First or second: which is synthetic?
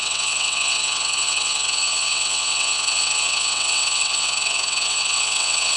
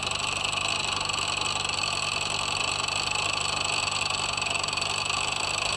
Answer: first